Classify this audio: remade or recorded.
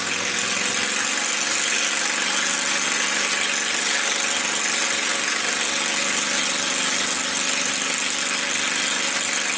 recorded